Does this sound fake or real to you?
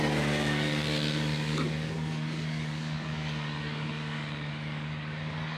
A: fake